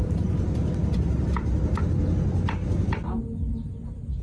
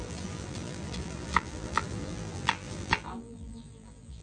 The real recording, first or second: first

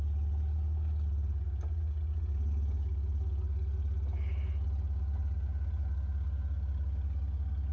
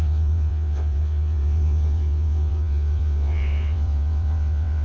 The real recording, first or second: first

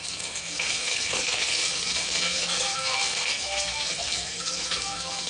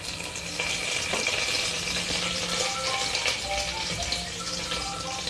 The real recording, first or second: second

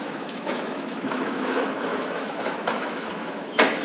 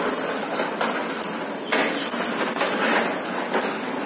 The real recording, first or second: second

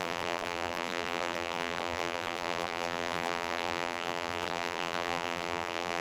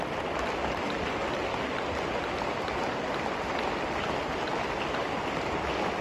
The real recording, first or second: second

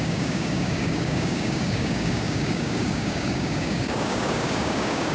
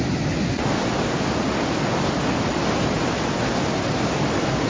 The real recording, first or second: second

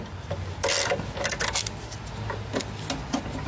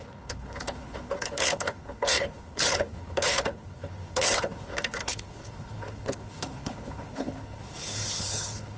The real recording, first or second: first